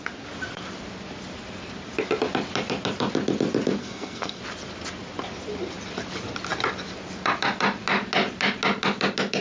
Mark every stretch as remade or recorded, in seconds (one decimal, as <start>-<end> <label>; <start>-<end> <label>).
0.0-3.8 recorded; 3.8-4.4 remade; 4.4-9.4 recorded